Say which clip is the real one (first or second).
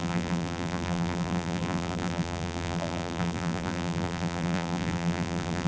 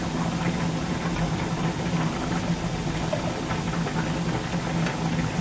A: second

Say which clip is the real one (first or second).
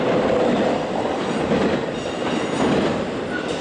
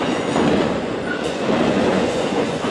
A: first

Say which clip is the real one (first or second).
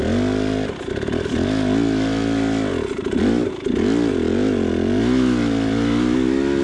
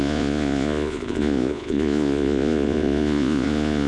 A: first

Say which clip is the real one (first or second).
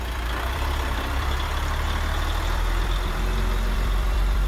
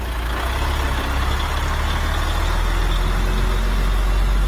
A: second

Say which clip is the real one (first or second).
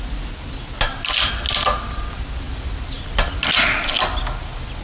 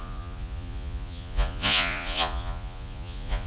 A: first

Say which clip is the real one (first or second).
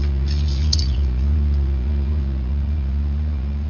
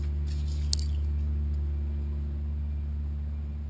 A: second